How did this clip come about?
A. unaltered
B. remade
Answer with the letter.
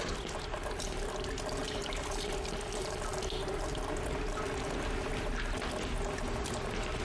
A